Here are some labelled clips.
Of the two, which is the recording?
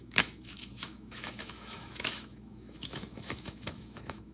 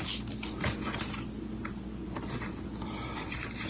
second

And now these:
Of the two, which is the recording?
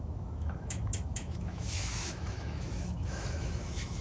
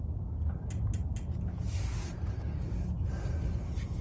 second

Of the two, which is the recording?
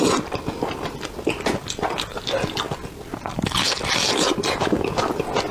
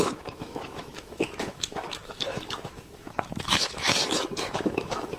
first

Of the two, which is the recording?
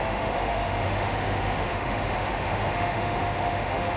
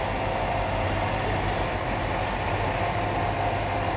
second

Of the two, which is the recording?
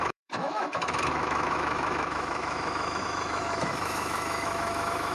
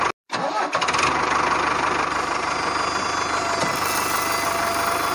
second